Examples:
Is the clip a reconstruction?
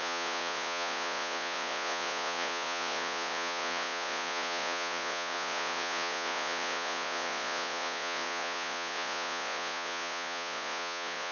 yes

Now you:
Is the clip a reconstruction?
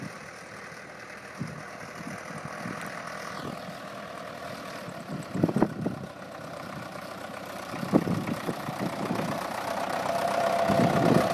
yes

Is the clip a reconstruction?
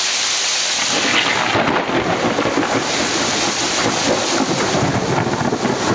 no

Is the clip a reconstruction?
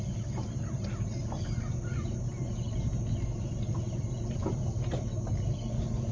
no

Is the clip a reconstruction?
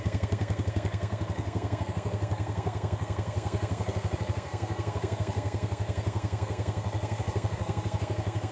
yes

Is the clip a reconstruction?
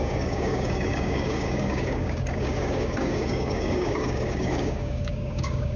yes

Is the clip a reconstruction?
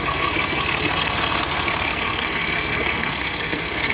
yes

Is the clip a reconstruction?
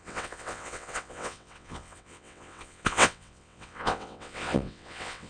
yes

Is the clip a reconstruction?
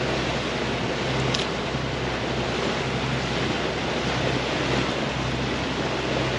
no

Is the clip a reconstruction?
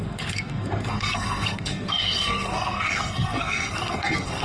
yes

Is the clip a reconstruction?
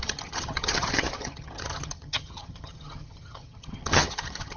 yes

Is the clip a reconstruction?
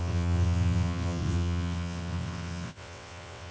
yes